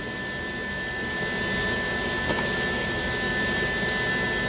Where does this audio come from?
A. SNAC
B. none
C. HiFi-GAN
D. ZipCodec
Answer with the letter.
B